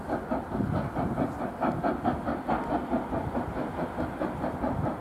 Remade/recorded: recorded